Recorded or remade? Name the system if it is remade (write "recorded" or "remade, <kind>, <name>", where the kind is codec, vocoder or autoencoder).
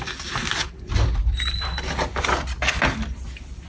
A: recorded